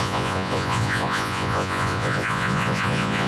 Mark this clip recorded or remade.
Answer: remade